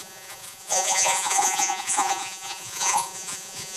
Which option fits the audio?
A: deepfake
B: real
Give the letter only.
A